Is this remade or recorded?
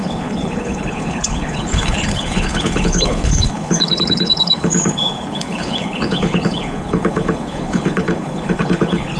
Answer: remade